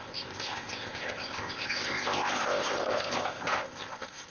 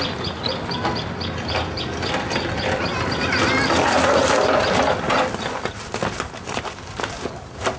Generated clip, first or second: first